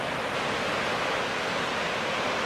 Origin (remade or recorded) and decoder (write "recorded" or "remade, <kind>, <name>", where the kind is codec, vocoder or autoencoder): recorded